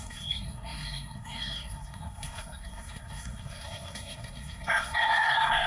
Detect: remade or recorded remade